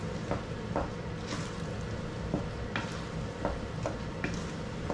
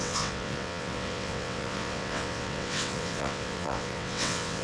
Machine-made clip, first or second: second